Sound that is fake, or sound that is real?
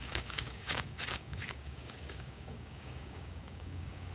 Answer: fake